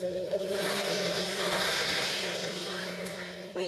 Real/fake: fake